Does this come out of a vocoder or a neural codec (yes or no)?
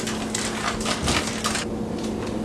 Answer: no